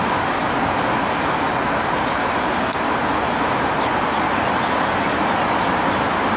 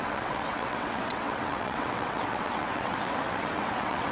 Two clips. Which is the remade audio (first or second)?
second